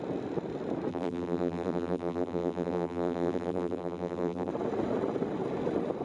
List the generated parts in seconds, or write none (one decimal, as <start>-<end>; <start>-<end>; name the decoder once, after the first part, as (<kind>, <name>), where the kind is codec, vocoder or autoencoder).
0.9-4.5 (vocoder, BigVGAN v2)